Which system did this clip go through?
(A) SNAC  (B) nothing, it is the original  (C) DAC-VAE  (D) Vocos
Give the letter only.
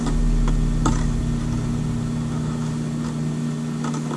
B